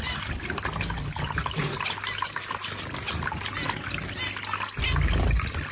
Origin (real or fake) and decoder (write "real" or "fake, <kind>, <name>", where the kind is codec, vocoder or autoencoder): real